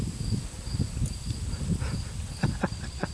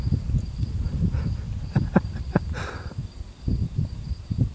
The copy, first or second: second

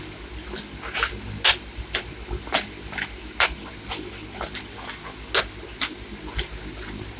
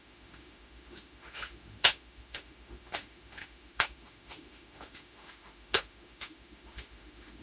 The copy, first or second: second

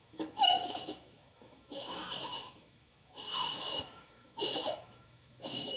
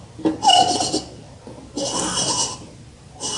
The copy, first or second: first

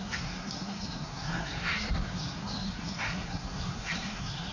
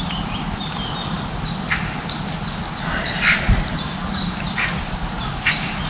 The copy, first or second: first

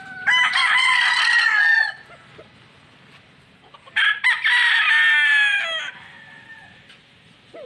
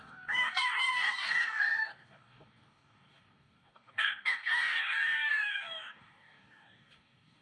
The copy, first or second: second